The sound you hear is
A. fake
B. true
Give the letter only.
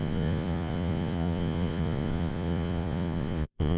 A